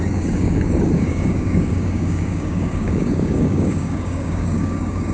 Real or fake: fake